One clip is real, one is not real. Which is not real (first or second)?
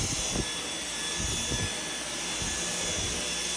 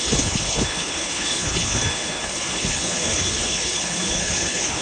second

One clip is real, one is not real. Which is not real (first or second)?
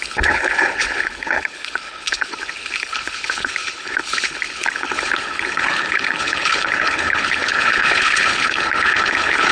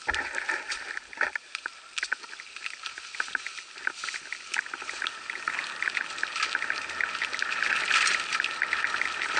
first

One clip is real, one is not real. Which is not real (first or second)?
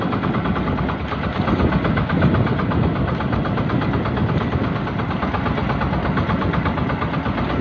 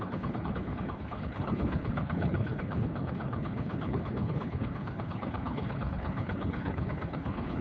second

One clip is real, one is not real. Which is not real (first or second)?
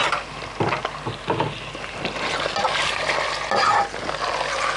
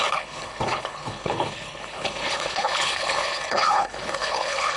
second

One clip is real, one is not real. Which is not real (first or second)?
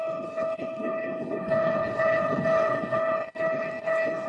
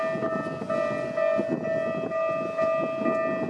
first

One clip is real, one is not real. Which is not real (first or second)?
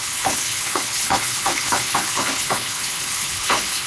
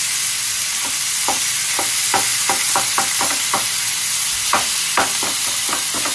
first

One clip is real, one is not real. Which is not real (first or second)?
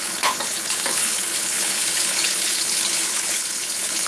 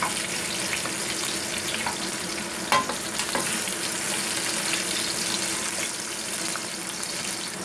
first